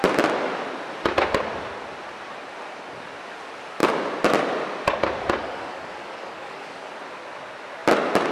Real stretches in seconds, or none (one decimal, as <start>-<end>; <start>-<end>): 0.0-5.4; 6.9-8.3